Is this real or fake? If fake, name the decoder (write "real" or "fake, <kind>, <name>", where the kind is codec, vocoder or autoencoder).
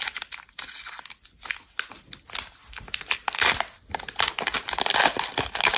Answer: real